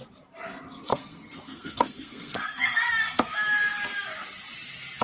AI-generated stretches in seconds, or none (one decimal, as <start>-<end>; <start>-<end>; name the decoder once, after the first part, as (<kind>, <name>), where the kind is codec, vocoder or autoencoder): 0.9-3.3 (codec, SNAC)